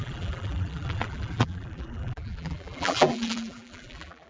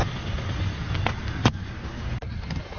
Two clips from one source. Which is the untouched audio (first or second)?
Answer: second